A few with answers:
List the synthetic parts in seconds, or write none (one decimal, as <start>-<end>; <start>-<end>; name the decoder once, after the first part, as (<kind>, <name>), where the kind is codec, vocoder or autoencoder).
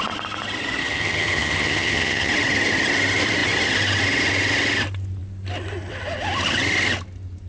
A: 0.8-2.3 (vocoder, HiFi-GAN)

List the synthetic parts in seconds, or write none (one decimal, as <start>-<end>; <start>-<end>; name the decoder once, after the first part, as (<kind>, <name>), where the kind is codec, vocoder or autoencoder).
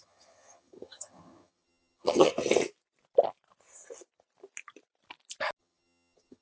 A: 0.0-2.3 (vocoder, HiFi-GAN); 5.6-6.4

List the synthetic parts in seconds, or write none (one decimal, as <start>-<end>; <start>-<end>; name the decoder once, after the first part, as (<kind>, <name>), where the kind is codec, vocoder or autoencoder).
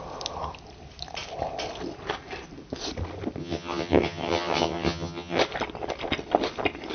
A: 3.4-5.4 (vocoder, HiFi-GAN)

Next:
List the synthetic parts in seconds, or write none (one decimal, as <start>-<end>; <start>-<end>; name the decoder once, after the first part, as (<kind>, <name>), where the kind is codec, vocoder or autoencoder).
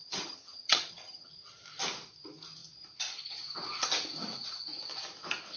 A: 0.0-1.3 (vocoder, HiFi-GAN)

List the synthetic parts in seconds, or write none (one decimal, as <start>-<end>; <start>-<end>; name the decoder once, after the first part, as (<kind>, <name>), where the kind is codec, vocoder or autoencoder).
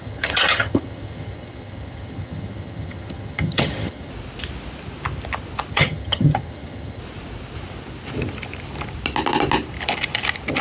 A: 0.0-4.1 (vocoder, HiFi-GAN); 5.7-7.0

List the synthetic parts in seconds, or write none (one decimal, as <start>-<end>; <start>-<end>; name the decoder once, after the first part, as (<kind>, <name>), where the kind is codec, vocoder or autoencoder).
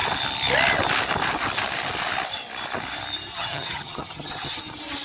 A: 3.3-4.6 (vocoder, HiFi-GAN)